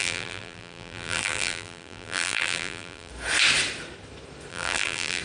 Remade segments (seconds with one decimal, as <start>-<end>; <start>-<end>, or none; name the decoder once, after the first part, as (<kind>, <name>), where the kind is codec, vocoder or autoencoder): 0.0-3.1 (vocoder, BigVGAN v2); 4.5-5.2